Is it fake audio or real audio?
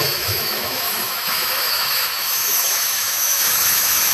fake